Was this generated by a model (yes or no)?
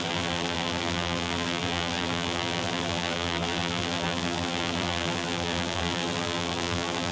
yes